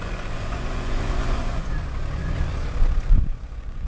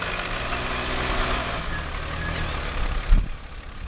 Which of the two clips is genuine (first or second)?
second